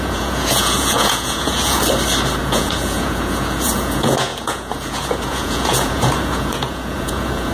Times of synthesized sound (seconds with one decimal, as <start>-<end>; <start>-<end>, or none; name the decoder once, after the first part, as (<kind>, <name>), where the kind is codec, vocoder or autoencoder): 0.0-1.8 (vocoder, Vocos); 2.4-7.5